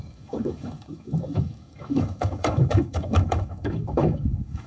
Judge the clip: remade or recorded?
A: remade